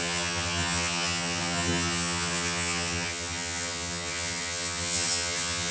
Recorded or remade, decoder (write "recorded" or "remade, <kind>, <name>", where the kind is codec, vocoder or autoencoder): remade, vocoder, HiFi-GAN